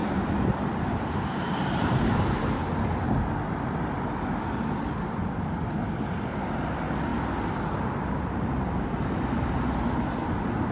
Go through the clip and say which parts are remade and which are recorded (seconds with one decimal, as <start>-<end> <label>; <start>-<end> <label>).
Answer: 0.0-2.6 remade; 2.6-10.7 recorded